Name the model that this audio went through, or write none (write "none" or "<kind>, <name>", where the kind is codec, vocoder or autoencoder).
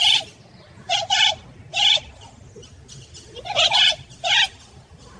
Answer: none